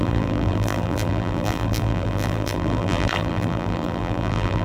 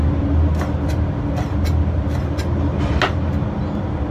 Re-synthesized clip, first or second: first